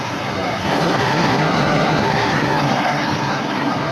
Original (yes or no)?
no